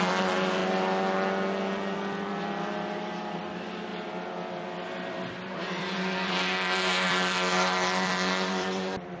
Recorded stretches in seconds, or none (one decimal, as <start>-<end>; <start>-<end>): 0.6-2.4